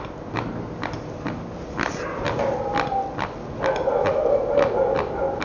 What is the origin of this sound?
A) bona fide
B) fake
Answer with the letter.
A